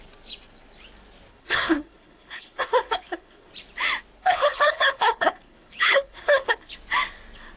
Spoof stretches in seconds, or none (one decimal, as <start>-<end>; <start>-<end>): 1.3-3.5; 4.2-6.7